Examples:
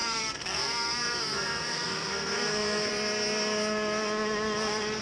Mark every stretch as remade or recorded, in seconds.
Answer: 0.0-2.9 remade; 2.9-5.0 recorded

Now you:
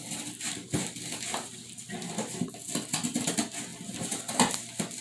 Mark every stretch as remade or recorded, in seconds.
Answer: 0.0-3.7 recorded; 3.7-4.2 remade; 4.2-5.0 recorded

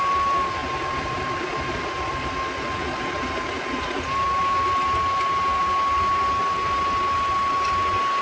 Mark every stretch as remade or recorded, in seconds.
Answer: 0.0-8.2 recorded

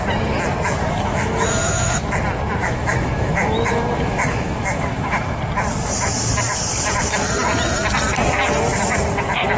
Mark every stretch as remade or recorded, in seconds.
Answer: 0.0-0.8 recorded; 0.8-2.1 remade; 2.1-2.6 recorded; 2.6-5.4 remade; 5.4-9.6 recorded

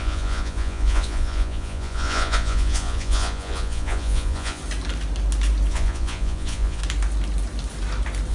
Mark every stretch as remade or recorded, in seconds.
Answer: 0.0-4.6 remade; 4.6-5.7 recorded; 5.7-6.8 remade; 6.8-8.3 recorded

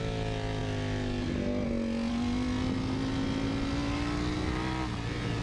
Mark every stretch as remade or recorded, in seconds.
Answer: 0.0-5.4 recorded

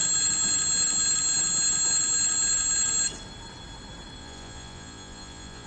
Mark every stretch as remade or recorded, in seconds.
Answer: 0.0-4.2 recorded; 4.2-5.7 remade

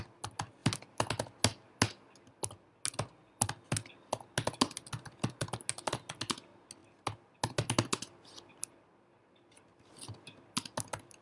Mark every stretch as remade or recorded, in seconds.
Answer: 0.0-11.2 recorded